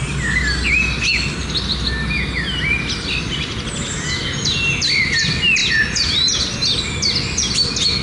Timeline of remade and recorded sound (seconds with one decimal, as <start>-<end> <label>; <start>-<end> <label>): 0.0-8.0 recorded